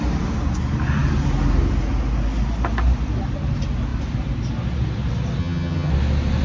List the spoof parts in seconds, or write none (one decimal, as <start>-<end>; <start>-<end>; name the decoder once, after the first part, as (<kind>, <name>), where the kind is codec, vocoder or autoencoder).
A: 5.4-5.9 (vocoder, HiFi-GAN)